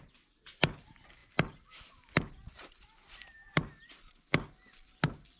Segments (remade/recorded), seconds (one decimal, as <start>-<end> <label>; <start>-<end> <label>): 0.0-5.4 recorded